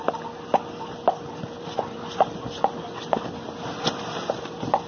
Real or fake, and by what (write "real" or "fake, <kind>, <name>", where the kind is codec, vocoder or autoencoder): real